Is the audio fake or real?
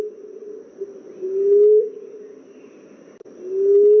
real